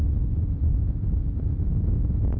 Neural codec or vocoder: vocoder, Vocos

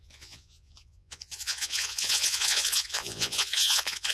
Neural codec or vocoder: vocoder, Vocos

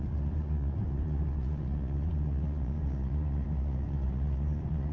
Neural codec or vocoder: vocoder, Vocos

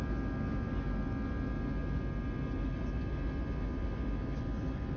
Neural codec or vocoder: none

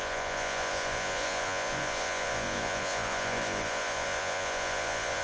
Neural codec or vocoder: vocoder, Vocos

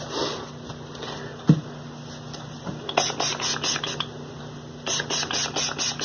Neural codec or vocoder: none